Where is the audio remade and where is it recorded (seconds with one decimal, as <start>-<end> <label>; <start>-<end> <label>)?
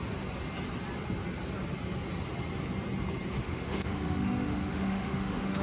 0.0-3.4 recorded; 3.4-5.6 remade